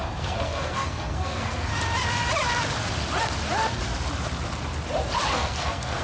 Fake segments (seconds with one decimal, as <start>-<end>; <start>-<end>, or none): 0.0-1.7; 5.3-6.0